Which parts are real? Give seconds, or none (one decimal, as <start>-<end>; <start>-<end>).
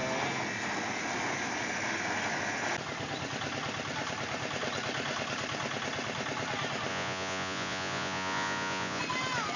0.0-6.9; 9.0-9.6